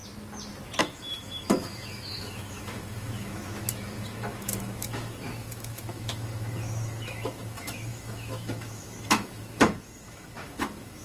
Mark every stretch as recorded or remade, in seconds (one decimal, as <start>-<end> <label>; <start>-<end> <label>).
0.0-0.8 recorded; 0.8-11.0 remade